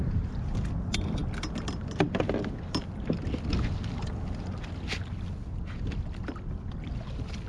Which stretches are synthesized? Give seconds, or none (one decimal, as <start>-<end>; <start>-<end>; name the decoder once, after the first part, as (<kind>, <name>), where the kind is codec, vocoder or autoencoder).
none